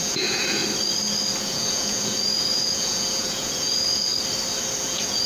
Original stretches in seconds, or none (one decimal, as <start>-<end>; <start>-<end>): 0.6-1.4; 4.1-4.8